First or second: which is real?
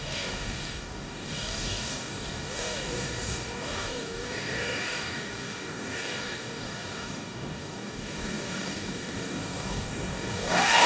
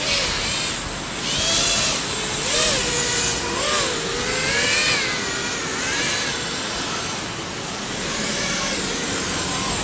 second